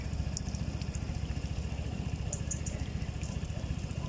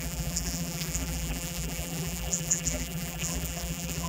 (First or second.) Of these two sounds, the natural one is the first